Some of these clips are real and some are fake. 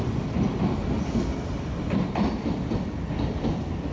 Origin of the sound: real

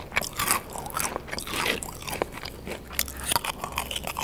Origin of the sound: real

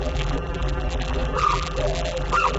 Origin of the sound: fake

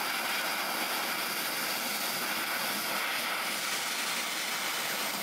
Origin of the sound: real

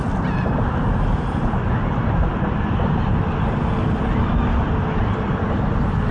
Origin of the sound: fake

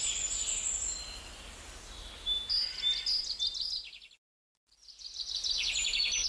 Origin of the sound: real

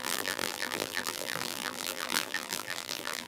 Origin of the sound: fake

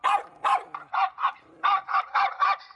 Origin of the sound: fake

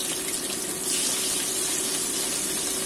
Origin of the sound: real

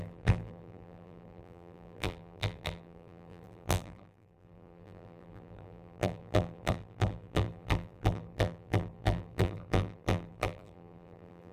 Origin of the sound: fake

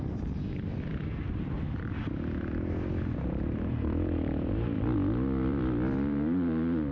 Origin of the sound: fake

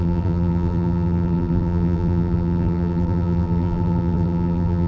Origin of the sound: fake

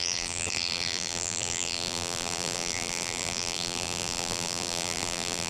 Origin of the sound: fake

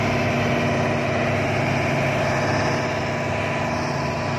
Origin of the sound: real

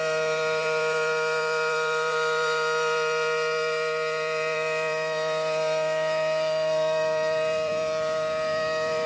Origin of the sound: fake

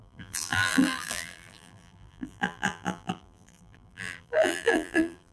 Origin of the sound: fake